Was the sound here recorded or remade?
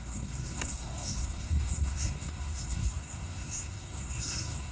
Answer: remade